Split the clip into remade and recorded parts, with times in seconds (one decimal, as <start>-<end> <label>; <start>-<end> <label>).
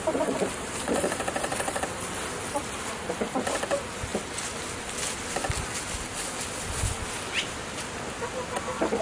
0.0-1.8 remade; 1.8-9.0 recorded